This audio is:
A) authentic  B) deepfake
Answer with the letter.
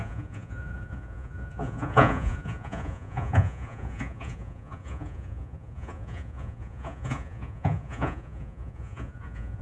B